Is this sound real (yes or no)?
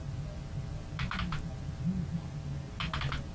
yes